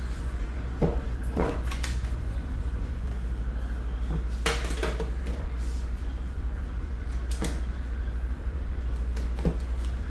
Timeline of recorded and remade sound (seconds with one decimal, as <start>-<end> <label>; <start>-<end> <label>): 0.0-3.1 remade; 3.1-5.2 recorded; 5.2-10.1 remade